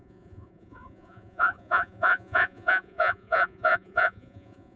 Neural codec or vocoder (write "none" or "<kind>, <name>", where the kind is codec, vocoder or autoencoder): vocoder, Vocos